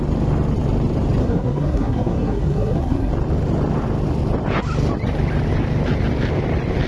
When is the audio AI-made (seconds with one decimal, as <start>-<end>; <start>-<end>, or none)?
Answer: 1.2-3.1